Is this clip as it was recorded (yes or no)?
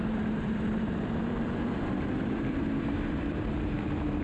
no